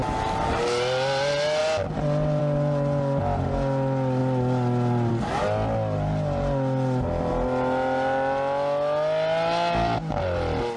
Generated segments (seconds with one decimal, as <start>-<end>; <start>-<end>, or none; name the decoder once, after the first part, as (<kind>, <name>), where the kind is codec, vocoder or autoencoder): none